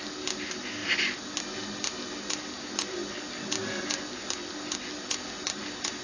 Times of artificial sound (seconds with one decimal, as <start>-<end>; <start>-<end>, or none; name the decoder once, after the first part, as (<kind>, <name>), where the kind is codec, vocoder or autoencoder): none